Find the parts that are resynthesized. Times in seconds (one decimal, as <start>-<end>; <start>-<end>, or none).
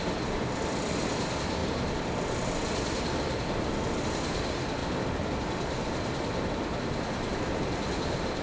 none